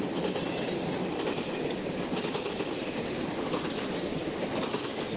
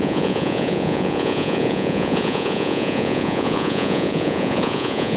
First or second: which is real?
first